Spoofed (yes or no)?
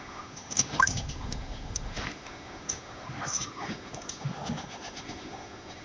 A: yes